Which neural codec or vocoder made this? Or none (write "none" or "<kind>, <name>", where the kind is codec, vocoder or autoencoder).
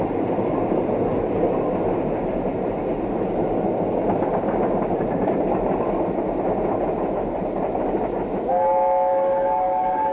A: none